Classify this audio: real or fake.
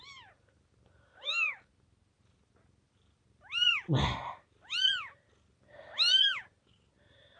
real